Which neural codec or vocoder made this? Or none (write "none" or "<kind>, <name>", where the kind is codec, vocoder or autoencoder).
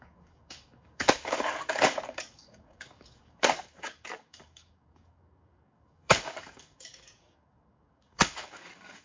codec, DAC